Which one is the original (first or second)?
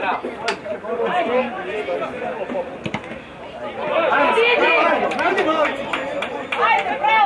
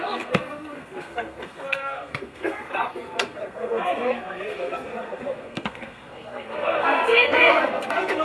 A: first